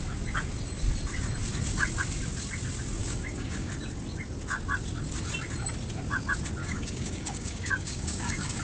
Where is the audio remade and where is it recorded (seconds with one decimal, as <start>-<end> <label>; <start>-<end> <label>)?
0.0-3.0 recorded; 3.0-3.7 remade; 3.7-6.6 recorded; 6.6-8.6 remade